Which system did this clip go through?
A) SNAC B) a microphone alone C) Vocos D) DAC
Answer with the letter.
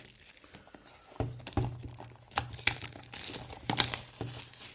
B